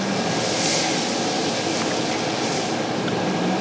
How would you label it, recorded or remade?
recorded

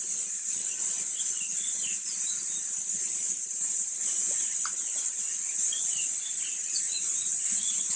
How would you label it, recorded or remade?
remade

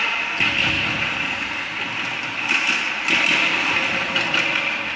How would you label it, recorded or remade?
recorded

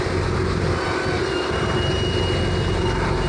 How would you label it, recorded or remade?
recorded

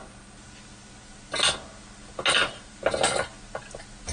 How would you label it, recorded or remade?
recorded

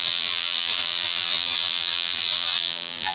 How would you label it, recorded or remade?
remade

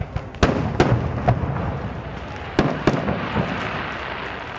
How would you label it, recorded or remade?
recorded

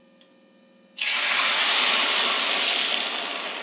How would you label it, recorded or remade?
recorded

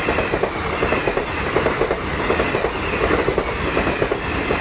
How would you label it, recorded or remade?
recorded